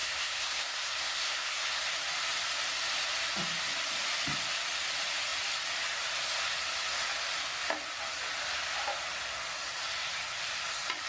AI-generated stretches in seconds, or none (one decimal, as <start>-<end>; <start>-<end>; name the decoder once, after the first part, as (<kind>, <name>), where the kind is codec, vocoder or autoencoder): 0.0-1.8 (codec, SNAC)